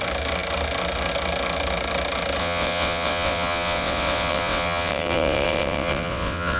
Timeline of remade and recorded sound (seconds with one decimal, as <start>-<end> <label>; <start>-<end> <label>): 0.0-2.4 recorded; 2.4-6.6 remade